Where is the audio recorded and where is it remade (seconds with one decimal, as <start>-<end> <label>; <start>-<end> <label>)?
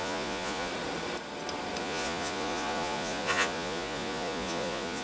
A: 0.0-0.7 remade; 0.7-1.8 recorded; 1.8-5.0 remade